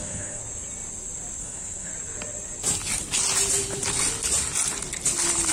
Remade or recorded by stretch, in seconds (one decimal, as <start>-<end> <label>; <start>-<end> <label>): 0.0-0.4 remade; 0.4-1.4 recorded; 1.4-1.9 remade; 1.9-5.5 recorded